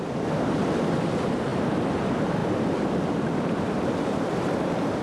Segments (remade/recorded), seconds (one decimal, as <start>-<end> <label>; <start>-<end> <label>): 0.0-5.0 recorded